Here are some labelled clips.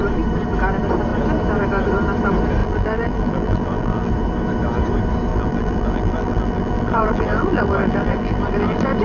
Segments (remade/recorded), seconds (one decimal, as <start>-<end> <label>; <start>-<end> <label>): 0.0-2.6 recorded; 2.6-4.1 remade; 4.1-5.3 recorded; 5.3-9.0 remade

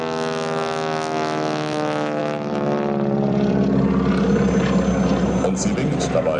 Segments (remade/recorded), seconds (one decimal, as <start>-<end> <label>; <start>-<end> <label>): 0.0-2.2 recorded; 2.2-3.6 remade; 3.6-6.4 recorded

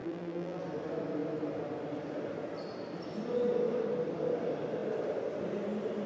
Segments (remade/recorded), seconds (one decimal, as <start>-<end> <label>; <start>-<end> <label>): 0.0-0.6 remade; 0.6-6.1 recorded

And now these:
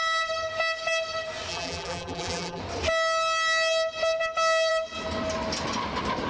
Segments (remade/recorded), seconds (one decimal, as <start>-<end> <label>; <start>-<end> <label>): 0.0-1.5 recorded; 1.5-2.6 remade; 2.6-6.3 recorded